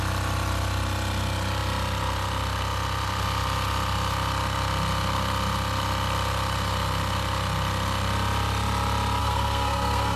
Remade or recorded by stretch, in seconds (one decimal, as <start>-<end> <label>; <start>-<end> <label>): 0.0-9.2 recorded; 9.2-10.2 remade